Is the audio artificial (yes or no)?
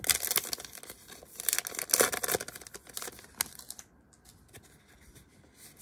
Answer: no